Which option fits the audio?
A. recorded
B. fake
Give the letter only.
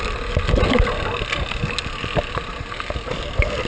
A